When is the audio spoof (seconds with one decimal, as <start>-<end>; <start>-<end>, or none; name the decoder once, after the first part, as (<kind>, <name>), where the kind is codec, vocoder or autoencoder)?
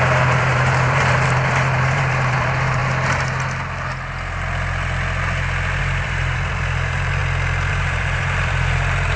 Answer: 0.0-2.8 (vocoder, BigVGAN v2); 5.8-7.2; 7.7-9.2